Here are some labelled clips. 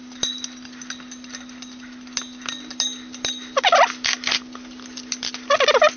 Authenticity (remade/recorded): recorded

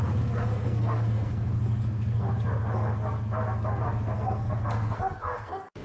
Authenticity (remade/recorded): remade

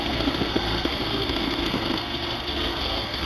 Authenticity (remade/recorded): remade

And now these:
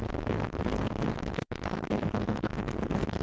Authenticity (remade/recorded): remade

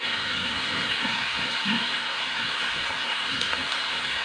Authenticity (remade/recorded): remade